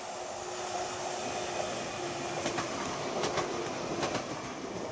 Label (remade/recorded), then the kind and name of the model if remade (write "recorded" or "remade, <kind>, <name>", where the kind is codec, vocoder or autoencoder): recorded